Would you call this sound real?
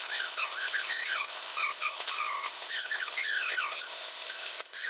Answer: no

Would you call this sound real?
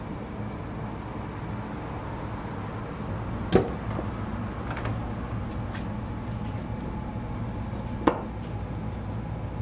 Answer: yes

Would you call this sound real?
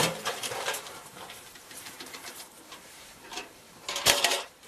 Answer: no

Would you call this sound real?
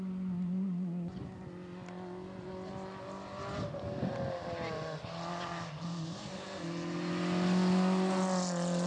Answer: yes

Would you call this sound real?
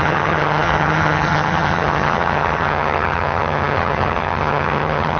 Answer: no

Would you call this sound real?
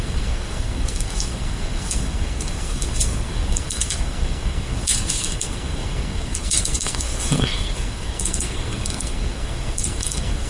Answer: no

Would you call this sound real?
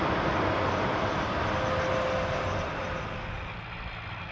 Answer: yes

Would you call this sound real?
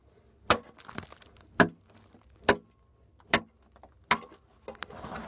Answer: yes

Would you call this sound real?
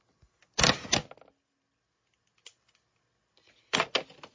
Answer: yes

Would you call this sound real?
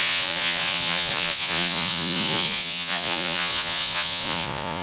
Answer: no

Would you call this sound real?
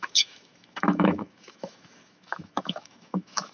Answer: no